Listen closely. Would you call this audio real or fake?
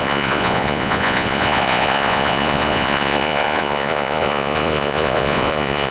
fake